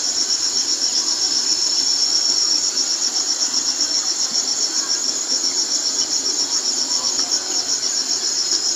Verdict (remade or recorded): recorded